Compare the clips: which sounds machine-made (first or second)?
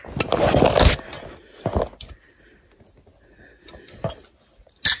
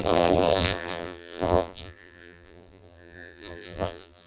second